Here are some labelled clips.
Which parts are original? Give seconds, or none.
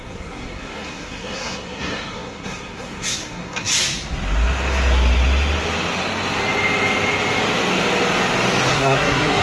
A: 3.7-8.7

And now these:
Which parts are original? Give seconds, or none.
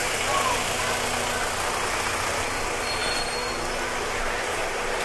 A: 0.0-5.0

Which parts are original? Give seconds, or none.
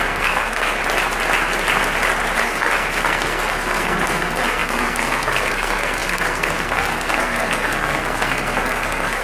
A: 0.8-2.4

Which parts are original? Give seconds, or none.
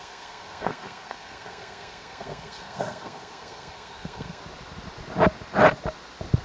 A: 4.4-6.4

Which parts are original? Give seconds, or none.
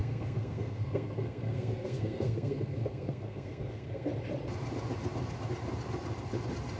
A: 4.1-6.8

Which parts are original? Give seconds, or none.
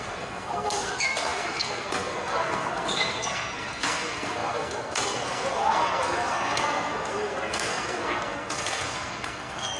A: none